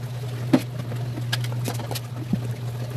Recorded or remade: recorded